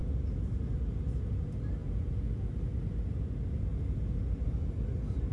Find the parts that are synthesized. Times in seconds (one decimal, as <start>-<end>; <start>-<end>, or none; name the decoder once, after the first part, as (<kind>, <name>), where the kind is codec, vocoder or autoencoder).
1.8-2.5 (vocoder, Vocos)